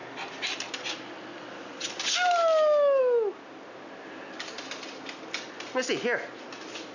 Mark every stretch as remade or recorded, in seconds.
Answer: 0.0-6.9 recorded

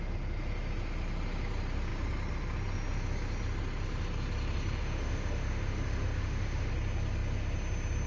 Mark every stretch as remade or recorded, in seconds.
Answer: 0.0-4.8 recorded; 4.8-6.7 remade; 6.7-8.1 recorded

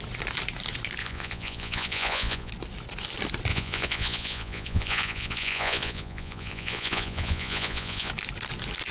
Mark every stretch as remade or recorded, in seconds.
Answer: 0.0-1.0 recorded; 1.0-2.5 remade; 2.5-3.5 recorded; 3.5-8.1 remade; 8.1-8.9 recorded

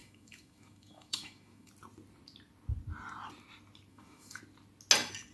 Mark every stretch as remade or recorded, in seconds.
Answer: 0.0-1.7 remade; 1.7-3.9 recorded; 3.9-4.4 remade; 4.4-5.3 recorded

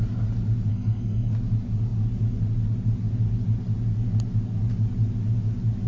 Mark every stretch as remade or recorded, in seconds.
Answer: 0.0-0.7 recorded; 0.7-1.3 remade; 1.3-5.9 recorded